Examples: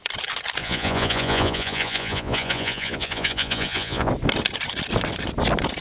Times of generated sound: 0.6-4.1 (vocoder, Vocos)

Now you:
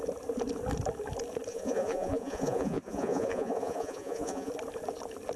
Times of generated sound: 1.5-4.5 (vocoder, Vocos)

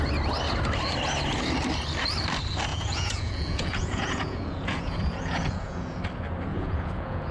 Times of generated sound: 2.7-6.0 (vocoder, Vocos); 6.5-7.3

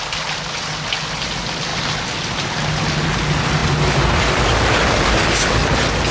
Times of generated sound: none